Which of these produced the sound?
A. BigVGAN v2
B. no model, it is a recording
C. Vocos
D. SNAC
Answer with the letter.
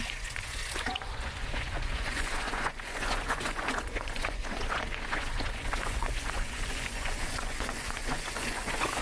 C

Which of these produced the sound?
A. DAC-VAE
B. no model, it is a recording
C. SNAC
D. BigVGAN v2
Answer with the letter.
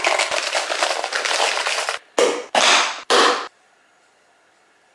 B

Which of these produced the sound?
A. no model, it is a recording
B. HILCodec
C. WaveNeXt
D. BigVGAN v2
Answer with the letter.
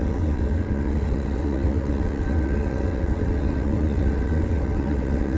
C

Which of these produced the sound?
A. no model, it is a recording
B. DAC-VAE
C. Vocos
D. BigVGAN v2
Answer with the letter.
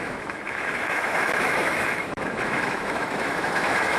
B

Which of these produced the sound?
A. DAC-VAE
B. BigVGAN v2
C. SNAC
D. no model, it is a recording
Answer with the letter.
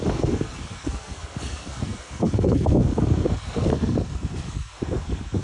C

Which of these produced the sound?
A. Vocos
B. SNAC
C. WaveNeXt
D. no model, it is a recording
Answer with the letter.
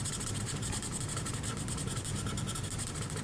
D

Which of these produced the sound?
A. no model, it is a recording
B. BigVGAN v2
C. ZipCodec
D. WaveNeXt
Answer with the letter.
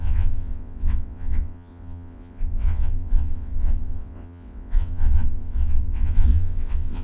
D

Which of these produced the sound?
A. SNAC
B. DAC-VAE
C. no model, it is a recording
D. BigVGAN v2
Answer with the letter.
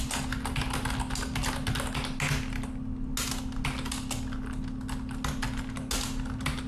C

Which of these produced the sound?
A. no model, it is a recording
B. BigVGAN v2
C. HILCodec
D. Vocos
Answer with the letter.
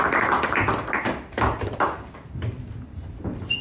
A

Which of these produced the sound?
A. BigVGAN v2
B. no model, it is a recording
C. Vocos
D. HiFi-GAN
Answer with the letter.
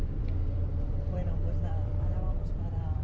A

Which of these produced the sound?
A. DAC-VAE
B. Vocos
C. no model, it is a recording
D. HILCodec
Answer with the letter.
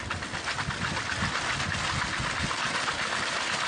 C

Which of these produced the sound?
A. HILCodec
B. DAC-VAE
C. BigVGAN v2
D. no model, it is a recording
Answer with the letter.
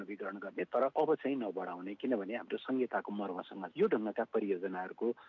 D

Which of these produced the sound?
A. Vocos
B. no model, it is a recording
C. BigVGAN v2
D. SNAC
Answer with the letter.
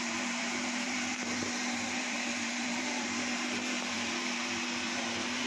C